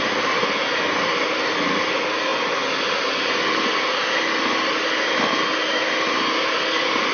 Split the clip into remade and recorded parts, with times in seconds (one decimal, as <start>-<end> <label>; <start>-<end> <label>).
0.0-7.1 recorded